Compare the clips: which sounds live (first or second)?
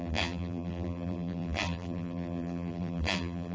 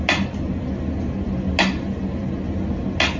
second